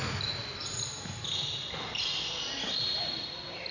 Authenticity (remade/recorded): recorded